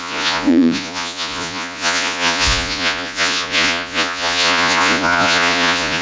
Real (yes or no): no